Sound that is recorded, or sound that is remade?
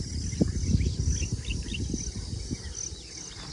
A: recorded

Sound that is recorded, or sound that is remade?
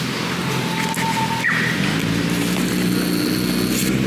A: recorded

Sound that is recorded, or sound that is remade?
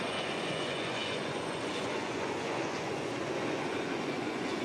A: remade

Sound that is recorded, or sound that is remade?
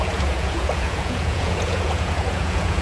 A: remade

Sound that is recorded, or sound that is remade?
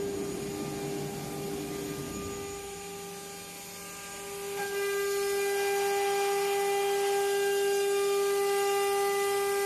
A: recorded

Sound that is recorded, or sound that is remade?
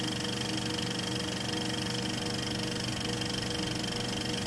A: recorded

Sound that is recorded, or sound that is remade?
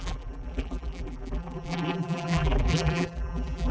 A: remade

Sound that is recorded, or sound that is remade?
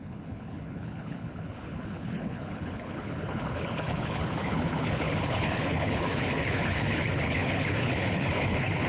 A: remade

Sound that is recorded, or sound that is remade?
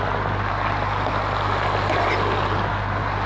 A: recorded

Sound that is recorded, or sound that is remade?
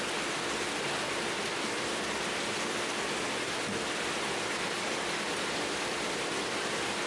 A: recorded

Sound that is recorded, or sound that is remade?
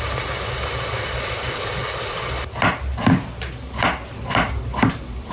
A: recorded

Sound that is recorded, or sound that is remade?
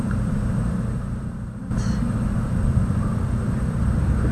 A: remade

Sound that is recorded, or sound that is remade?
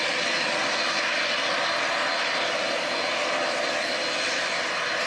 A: recorded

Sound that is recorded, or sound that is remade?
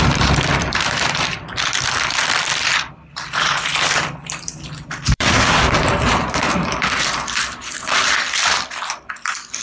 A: remade